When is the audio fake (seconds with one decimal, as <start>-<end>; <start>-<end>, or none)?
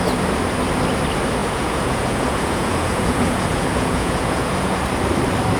1.4-4.8